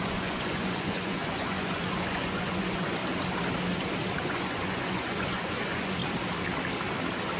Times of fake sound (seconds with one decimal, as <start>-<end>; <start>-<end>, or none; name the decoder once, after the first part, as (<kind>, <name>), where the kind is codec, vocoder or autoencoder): 0.0-3.0 (vocoder, Vocos); 4.2-6.0